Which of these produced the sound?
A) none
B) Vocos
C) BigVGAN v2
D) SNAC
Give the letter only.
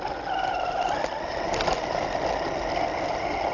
A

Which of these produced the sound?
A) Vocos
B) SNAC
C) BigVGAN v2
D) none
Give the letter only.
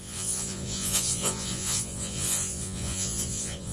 A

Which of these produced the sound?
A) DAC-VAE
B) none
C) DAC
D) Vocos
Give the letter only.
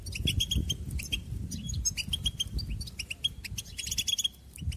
B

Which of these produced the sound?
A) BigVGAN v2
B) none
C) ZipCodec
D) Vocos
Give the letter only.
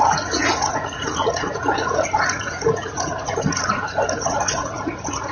D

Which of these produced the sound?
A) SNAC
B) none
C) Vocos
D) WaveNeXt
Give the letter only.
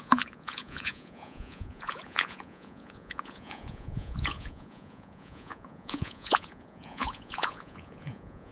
C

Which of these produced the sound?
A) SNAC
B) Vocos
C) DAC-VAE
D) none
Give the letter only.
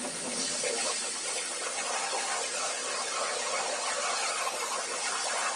D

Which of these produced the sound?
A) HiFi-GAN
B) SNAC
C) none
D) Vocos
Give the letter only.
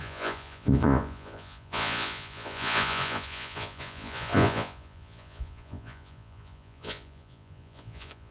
D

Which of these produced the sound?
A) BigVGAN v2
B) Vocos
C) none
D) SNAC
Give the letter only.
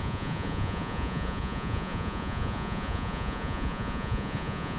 B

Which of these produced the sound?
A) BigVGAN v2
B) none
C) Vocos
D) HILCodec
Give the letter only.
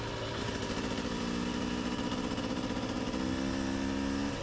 B